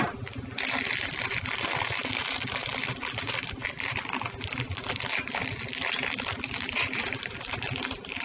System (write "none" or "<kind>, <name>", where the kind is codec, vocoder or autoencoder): none